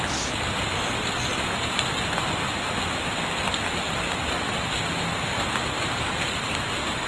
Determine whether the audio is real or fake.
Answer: real